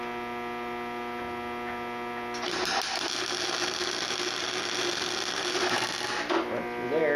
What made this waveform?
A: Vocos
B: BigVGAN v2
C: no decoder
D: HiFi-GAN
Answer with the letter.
C